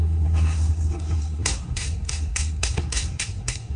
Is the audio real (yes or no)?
no